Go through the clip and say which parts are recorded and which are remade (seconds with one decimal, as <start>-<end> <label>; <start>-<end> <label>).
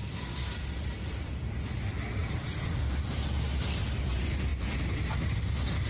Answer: 0.0-2.2 recorded; 2.2-3.2 remade; 3.2-5.9 recorded